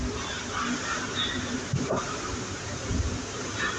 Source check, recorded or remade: remade